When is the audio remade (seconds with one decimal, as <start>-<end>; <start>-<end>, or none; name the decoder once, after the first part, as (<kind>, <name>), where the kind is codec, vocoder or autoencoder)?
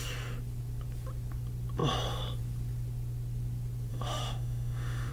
3.9-5.1 (autoencoder, DAC-VAE)